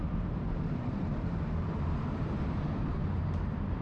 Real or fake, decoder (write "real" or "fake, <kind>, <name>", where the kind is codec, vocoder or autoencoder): fake, vocoder, BigVGAN v2